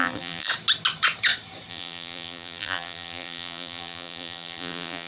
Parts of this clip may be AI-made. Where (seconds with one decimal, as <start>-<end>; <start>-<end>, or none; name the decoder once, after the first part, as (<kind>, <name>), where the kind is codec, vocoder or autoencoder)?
0.0-0.5 (vocoder, BigVGAN v2); 1.7-5.1